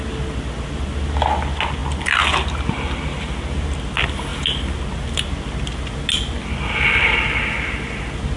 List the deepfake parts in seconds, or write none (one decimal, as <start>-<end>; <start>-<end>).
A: none